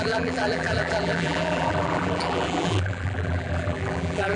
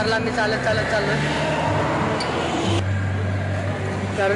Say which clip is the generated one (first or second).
first